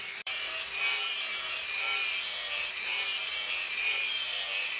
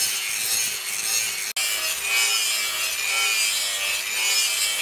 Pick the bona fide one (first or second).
second